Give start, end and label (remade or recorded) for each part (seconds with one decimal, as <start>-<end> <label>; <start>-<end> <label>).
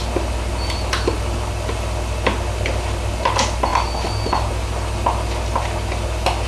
0.0-6.5 recorded